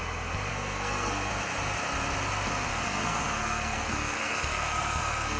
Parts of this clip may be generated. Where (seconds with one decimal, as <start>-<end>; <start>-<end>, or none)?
0.5-1.3; 2.7-5.4